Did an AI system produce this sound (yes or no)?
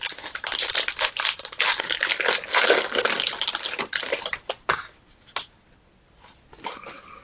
no